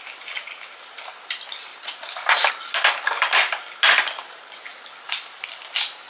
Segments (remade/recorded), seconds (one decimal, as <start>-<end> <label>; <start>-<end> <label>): 0.0-6.1 recorded